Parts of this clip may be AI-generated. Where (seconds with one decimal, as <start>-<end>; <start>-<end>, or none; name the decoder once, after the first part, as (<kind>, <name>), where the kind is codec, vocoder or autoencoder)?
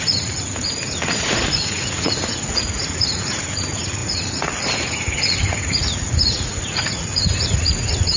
0.0-8.2 (vocoder, Vocos)